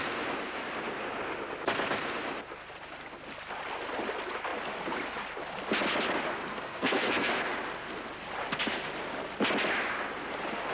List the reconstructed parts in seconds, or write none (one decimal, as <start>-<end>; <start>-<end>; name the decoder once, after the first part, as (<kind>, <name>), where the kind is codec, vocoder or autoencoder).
6.5-7.3 (codec, SNAC)